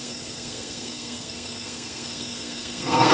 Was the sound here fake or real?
fake